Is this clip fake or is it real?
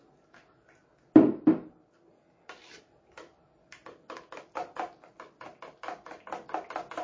real